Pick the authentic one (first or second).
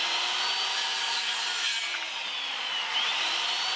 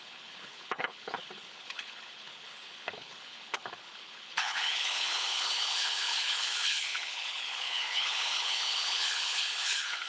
first